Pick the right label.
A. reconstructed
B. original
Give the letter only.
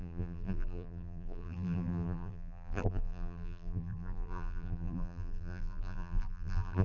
A